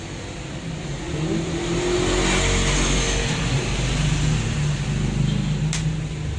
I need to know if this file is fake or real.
real